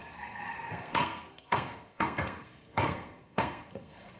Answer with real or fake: fake